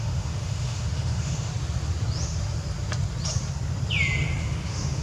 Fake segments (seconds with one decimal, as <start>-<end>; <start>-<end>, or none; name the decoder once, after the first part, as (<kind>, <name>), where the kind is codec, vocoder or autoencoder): 0.0-1.5 (autoencoder, DAC-VAE); 4.4-5.0